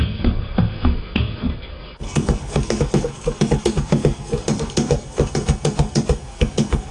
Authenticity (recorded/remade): remade